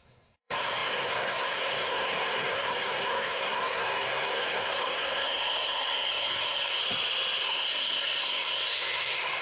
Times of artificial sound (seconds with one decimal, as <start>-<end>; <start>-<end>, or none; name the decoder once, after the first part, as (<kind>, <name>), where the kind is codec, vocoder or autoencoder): 0.0-6.8 (codec, SNAC); 7.4-9.4